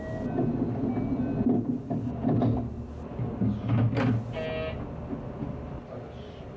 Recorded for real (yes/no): yes